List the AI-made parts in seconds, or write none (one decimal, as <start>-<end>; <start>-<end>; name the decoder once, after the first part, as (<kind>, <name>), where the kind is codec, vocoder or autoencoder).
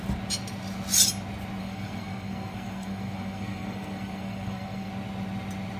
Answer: 1.6-4.9 (codec, SNAC)